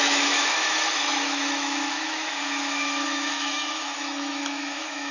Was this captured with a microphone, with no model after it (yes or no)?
no